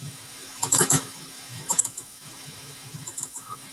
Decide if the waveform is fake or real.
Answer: fake